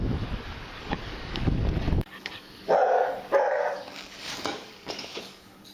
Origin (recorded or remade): remade